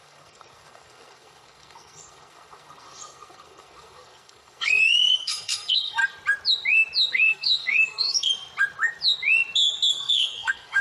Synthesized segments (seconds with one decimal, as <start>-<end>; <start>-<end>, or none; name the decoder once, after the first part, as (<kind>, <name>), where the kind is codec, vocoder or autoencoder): 0.0-6.0 (codec, SNAC); 7.1-8.3; 9.9-10.8